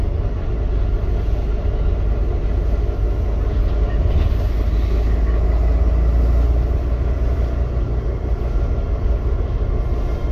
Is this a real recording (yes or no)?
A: yes